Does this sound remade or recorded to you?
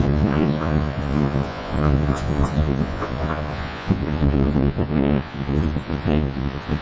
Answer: remade